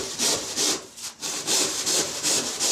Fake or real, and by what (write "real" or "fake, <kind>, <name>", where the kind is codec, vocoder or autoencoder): fake, vocoder, BigVGAN v2